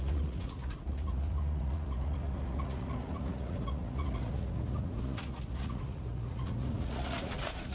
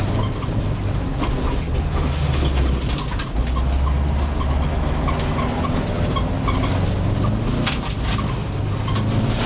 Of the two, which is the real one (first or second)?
second